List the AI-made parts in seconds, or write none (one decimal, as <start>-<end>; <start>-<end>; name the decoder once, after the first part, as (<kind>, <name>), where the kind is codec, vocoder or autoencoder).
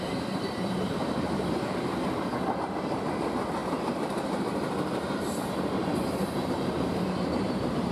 0.0-1.9 (vocoder, BigVGAN v2); 2.6-7.9